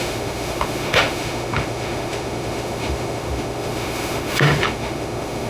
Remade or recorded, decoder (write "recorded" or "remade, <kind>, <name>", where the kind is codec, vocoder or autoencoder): remade, autoencoder, DAC-VAE